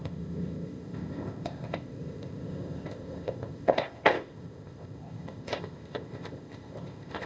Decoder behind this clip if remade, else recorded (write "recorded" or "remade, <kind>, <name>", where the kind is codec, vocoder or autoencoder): remade, codec, ZipCodec